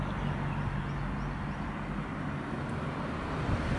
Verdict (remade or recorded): recorded